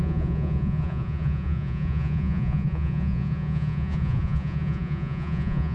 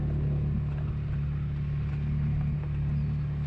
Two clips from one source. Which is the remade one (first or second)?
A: first